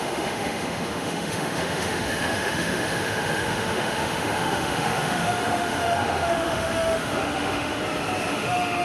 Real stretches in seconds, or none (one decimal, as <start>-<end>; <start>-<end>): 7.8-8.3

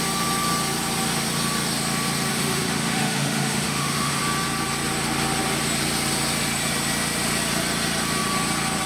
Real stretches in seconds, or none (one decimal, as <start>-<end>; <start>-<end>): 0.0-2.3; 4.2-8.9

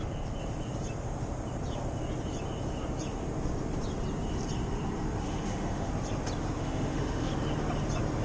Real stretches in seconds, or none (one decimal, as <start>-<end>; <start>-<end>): 0.0-5.2; 5.9-6.6; 7.3-8.2